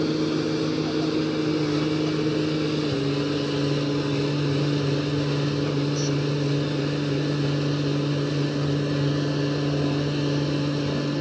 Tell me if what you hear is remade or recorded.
recorded